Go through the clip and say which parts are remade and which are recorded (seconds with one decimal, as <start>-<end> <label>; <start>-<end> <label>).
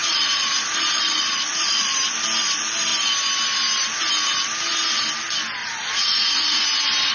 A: 0.0-1.9 remade; 1.9-5.6 recorded; 5.6-6.6 remade; 6.6-7.1 recorded